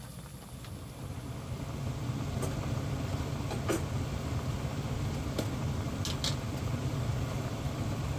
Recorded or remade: recorded